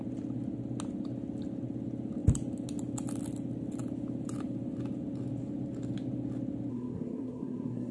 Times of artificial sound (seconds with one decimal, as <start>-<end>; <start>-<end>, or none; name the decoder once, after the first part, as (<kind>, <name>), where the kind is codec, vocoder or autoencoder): 6.7-7.9 (codec, SNAC)